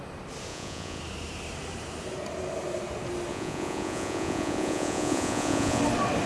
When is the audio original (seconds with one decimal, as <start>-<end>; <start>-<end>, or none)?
0.0-0.5; 1.0-3.3; 5.8-6.3